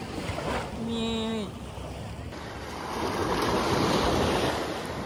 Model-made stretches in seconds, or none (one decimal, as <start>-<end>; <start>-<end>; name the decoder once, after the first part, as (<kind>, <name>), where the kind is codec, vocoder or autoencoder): none